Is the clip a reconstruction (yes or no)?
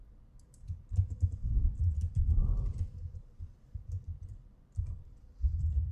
yes